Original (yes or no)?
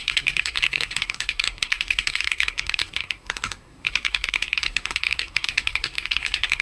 no